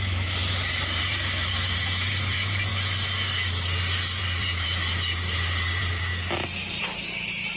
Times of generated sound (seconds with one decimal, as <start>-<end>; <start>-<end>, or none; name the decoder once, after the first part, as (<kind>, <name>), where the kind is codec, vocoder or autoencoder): 0.0-2.7 (vocoder, BigVGAN v2); 4.2-6.1; 6.8-7.6